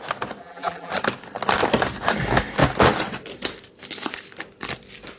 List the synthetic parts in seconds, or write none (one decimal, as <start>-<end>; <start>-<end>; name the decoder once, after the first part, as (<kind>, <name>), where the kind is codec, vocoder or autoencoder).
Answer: 0.4-0.9 (vocoder, BigVGAN v2)